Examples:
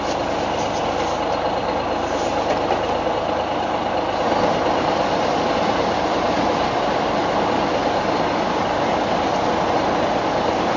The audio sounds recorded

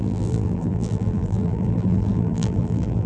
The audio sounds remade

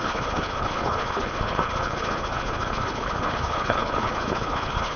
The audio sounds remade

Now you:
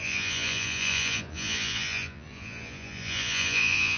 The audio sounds remade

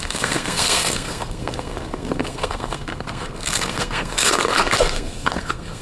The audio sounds remade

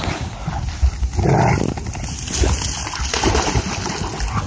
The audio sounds recorded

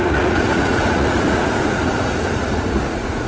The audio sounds remade